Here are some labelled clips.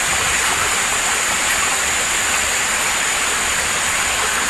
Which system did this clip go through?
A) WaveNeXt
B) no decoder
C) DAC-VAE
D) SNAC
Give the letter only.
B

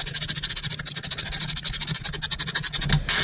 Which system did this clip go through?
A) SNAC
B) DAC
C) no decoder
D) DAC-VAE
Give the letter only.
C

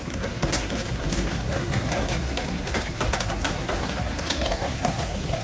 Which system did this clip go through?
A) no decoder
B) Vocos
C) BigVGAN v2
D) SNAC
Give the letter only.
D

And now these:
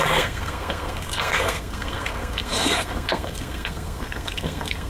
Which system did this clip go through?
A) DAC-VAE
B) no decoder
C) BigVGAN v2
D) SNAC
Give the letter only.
D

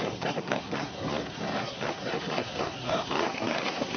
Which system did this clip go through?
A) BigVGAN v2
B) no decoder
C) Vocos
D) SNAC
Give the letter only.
D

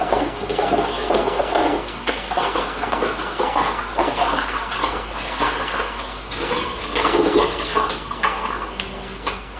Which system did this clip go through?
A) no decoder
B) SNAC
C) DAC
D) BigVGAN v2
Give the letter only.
B